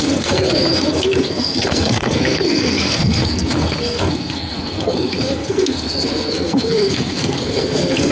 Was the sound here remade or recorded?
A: remade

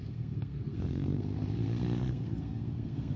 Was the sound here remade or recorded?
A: remade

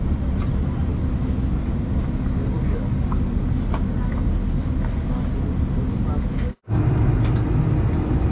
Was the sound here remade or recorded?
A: recorded